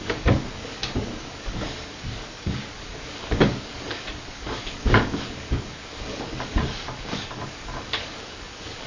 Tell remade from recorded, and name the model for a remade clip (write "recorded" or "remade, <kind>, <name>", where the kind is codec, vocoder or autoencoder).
remade, codec, DAC